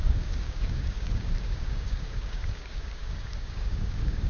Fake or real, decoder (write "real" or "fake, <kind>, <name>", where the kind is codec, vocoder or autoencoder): fake, codec, DAC